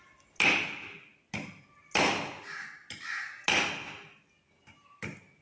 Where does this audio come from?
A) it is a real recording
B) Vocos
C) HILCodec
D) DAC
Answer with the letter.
A